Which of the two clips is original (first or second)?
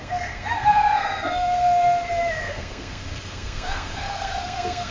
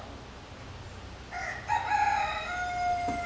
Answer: second